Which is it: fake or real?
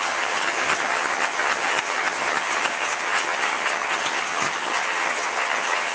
fake